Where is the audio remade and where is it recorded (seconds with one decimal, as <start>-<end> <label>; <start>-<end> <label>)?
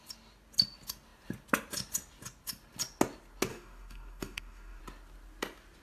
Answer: 0.0-3.5 recorded; 3.5-4.8 remade; 4.8-5.8 recorded